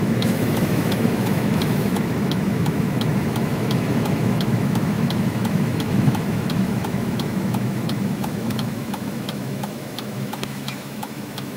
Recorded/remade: remade